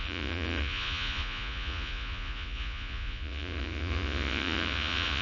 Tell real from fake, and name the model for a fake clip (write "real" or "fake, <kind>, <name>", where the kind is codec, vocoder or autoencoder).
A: fake, vocoder, Vocos